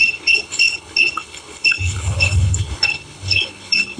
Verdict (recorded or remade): remade